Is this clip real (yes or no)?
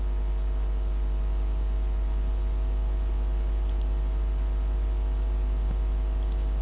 yes